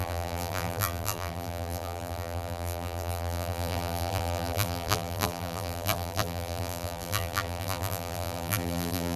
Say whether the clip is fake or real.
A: fake